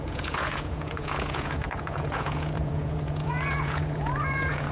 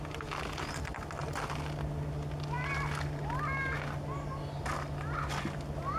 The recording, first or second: second